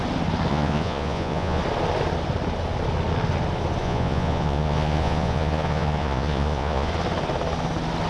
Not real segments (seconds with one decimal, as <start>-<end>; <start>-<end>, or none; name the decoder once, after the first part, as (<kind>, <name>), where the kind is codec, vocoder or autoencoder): 0.5-1.6 (vocoder, Vocos); 3.8-6.9